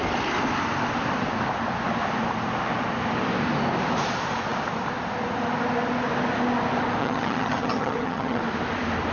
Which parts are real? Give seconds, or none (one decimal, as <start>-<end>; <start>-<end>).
0.0-7.0; 8.4-9.1